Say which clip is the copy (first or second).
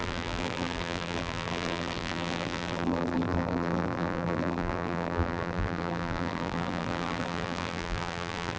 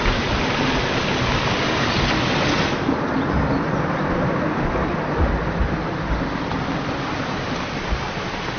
first